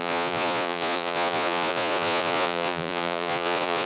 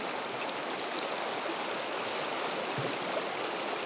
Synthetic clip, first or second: first